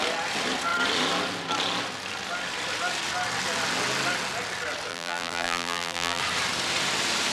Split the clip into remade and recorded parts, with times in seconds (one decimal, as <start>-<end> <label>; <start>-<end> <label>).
0.0-4.9 recorded; 4.9-6.2 remade; 6.2-7.3 recorded